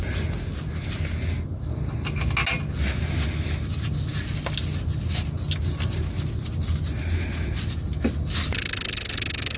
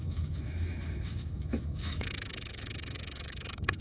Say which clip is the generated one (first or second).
second